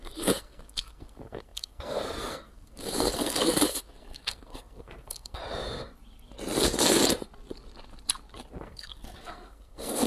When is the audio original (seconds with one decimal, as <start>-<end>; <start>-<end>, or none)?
5.4-8.6